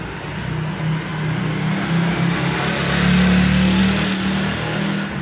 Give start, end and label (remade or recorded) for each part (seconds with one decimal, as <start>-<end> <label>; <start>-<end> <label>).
0.0-5.2 recorded